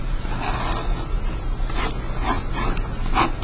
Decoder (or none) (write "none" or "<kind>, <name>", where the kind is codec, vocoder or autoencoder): none